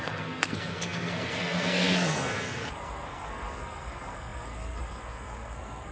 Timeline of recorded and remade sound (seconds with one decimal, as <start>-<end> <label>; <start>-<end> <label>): 0.0-5.9 remade